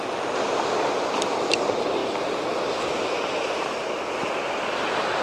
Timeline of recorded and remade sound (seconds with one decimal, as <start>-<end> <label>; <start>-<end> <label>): 0.0-2.0 recorded; 2.0-3.9 remade; 3.9-5.2 recorded

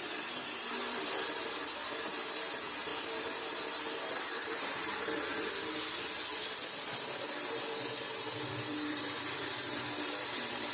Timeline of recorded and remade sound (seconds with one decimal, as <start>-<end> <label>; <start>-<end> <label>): 0.0-5.3 remade; 5.3-9.0 recorded; 9.0-10.7 remade

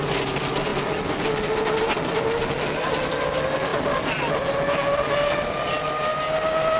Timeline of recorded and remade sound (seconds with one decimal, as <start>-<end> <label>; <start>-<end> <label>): 0.0-6.8 recorded

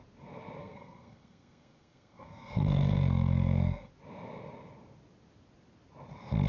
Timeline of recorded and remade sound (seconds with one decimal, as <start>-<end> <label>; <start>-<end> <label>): 0.0-0.6 recorded; 0.6-3.9 remade; 3.9-6.5 recorded

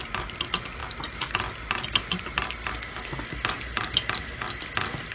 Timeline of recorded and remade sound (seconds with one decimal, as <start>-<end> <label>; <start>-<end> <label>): 0.0-5.1 recorded

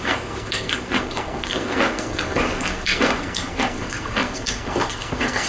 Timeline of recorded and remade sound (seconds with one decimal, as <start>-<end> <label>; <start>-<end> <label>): 0.0-5.5 remade

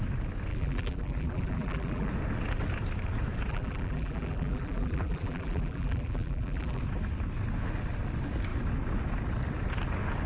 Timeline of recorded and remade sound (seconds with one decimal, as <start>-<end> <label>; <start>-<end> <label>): 0.0-0.5 recorded; 0.5-2.1 remade; 2.1-3.5 recorded; 3.5-6.8 remade; 6.8-10.3 recorded

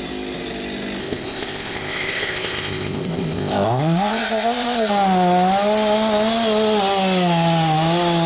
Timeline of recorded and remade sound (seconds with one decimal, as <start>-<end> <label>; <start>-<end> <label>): 0.0-1.0 recorded; 1.0-4.9 remade; 4.9-8.3 recorded